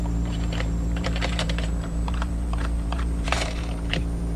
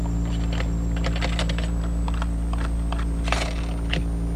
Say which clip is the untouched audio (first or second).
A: second